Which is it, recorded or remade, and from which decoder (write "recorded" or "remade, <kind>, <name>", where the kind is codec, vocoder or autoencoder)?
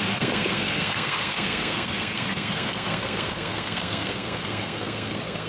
remade, codec, SNAC